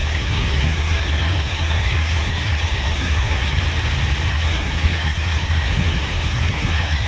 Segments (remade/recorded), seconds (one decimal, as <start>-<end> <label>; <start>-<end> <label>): 0.0-3.6 remade; 3.6-4.3 recorded; 4.3-7.1 remade

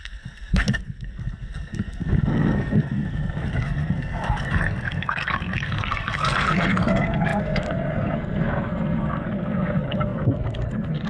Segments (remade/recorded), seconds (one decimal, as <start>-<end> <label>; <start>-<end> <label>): 0.0-11.1 remade

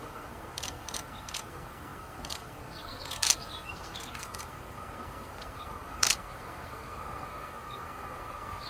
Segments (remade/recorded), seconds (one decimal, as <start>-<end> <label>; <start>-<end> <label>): 0.0-8.7 remade

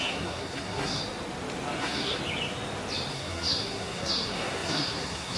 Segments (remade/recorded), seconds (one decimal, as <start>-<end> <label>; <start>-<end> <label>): 0.0-1.0 remade; 1.0-1.8 recorded; 1.8-2.2 remade; 2.2-3.1 recorded; 3.1-5.4 remade

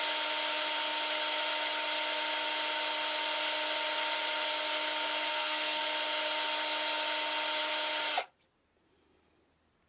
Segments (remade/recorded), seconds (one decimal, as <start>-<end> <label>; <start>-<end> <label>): 0.0-5.3 recorded; 5.3-5.8 remade; 5.8-9.9 recorded